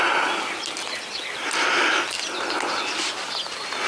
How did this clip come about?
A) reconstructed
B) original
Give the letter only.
B